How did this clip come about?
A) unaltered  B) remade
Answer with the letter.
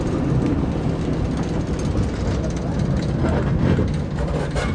A